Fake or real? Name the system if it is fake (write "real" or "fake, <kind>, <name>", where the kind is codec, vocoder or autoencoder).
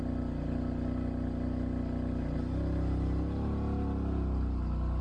real